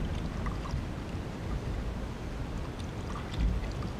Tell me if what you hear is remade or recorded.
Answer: recorded